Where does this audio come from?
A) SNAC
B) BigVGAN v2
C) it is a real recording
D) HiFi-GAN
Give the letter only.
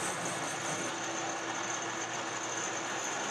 C